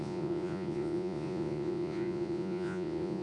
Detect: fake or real fake